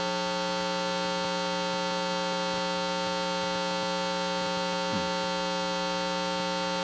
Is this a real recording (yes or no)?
yes